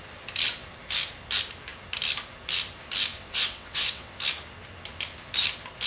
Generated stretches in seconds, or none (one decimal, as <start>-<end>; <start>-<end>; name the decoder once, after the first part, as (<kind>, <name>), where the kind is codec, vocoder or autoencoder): 3.1-4.2 (vocoder, WaveNeXt)

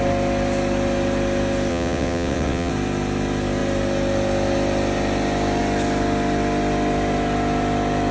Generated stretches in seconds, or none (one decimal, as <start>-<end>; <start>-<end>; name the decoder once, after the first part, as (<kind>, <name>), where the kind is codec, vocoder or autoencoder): 1.7-2.7 (vocoder, WaveNeXt)

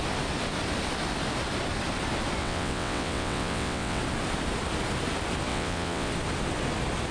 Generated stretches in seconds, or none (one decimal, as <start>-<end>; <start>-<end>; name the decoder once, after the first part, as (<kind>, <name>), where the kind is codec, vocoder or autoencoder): 2.4-4.0 (vocoder, WaveNeXt); 5.5-6.1

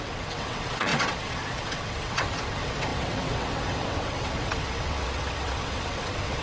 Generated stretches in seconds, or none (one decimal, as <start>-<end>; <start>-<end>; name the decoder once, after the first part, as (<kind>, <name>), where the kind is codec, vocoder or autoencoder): 0.0-6.4 (vocoder, WaveNeXt)

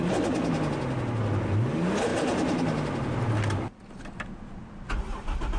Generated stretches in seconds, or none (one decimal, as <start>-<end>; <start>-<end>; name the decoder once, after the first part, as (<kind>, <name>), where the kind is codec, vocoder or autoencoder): none